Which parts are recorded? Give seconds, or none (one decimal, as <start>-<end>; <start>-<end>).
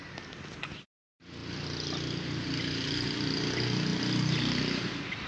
0.0-5.3